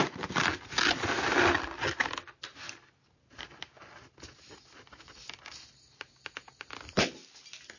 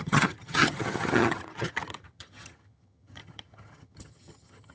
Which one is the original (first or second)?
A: first